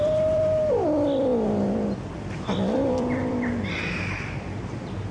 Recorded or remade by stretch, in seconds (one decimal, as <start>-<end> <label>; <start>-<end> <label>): 0.0-1.3 remade; 1.3-2.1 recorded; 2.1-3.2 remade; 3.2-3.7 recorded; 3.7-5.1 remade